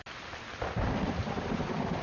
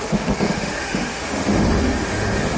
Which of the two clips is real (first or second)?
first